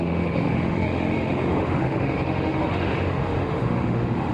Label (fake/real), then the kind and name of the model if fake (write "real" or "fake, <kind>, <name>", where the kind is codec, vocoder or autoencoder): fake, autoencoder, DAC-VAE